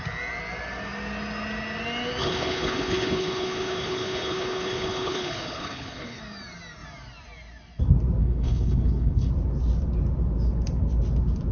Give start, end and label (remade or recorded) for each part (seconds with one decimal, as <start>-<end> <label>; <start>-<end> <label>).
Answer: 0.0-2.2 recorded; 2.2-6.2 remade; 6.2-8.2 recorded; 8.2-9.3 remade; 9.3-11.5 recorded